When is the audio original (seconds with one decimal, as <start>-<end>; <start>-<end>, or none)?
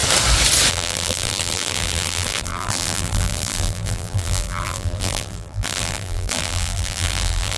0.0-0.7